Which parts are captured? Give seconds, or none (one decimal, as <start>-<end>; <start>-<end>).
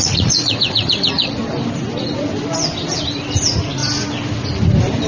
1.4-3.4; 3.8-5.1